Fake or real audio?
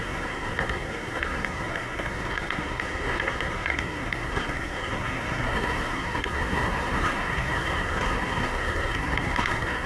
fake